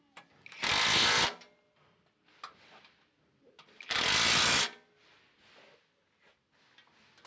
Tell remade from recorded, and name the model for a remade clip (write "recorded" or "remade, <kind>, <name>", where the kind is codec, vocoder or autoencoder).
recorded